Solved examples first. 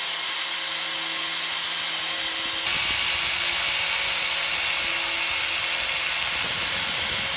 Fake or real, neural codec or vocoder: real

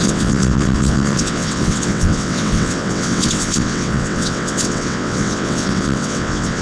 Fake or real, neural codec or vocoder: fake, vocoder, WaveNeXt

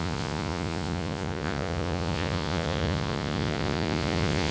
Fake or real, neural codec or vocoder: fake, vocoder, Vocos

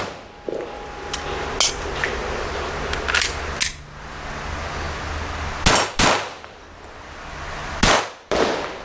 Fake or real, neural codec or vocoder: real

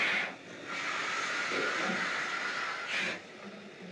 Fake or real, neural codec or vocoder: real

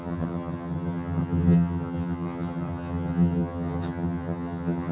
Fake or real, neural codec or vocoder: fake, vocoder, HiFi-GAN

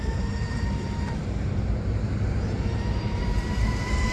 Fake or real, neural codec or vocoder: fake, vocoder, BigVGAN v2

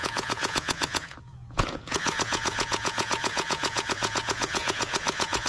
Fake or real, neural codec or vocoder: fake, vocoder, Vocos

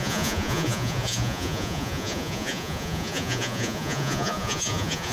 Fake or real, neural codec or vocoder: fake, vocoder, Vocos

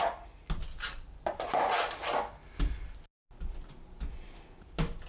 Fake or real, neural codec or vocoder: real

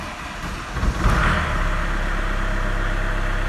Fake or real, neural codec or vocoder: real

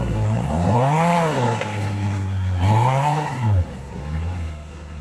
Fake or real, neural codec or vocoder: fake, codec, SNAC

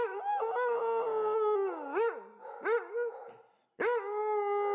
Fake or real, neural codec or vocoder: real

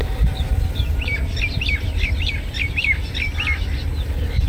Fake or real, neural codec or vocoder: real